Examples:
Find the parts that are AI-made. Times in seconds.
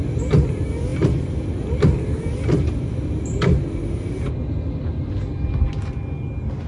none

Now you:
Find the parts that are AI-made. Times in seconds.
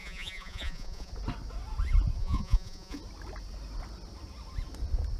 0.0-1.1 (vocoder, Vocos); 2.2-3.0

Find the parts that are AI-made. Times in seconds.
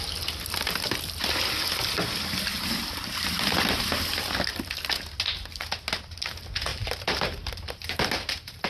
6.7-8.7 (vocoder, BigVGAN v2)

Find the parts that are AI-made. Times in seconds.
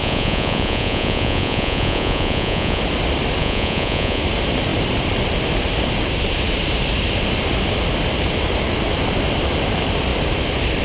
0.0-2.8 (vocoder, Vocos); 3.4-4.2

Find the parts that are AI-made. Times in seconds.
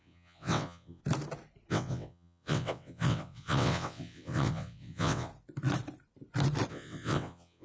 0.0-1.0 (vocoder, WaveNeXt); 1.7-5.3; 6.7-7.6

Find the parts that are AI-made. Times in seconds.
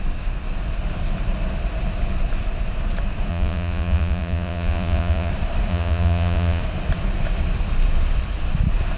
3.3-5.3 (vocoder, Vocos); 5.7-6.6